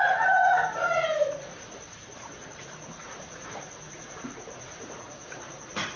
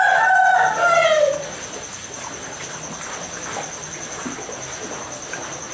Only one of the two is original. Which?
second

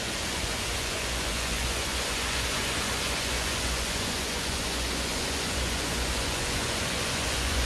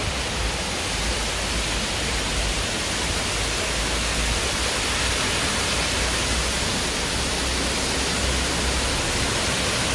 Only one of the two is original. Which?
second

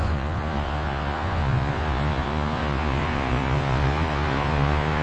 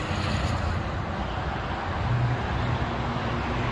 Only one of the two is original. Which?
second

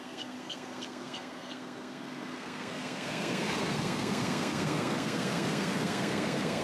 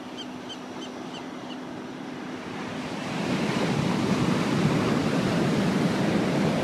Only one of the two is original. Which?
second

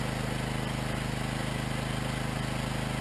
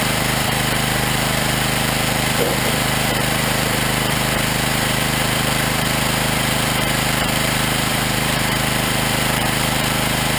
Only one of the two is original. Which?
first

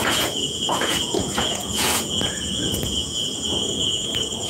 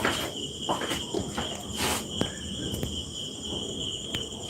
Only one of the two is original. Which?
second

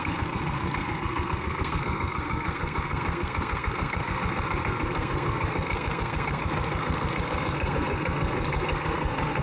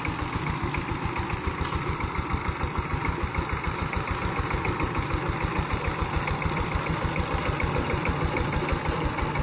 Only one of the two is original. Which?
second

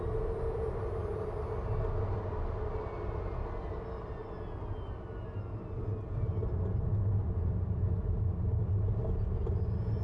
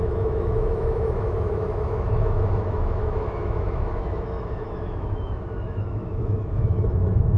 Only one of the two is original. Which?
first